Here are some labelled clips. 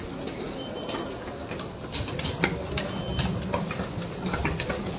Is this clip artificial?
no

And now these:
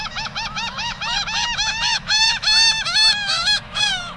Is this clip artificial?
yes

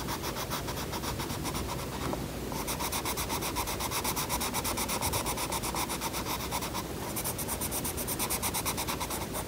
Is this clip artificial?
no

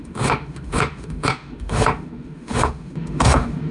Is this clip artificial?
yes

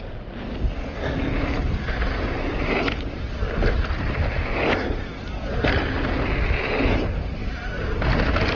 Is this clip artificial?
no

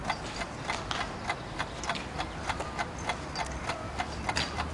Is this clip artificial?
no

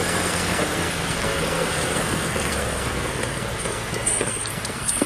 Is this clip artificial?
yes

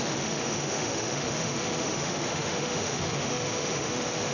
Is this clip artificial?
yes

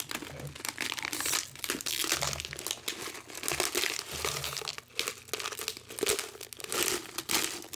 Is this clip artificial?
no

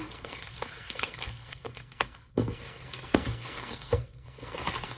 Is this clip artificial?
yes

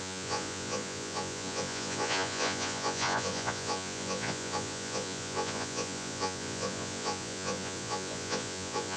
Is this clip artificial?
yes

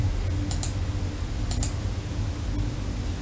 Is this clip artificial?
no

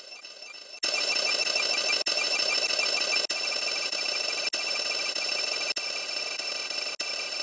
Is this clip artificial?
no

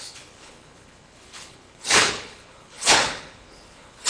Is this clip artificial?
yes